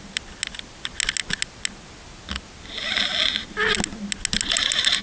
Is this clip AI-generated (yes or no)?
no